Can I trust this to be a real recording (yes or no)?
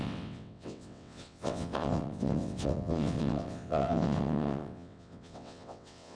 no